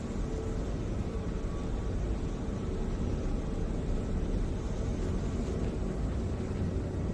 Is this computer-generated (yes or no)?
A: no